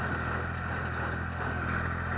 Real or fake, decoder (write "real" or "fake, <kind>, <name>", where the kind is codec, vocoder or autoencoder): real